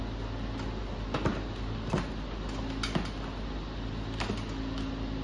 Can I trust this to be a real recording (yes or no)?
yes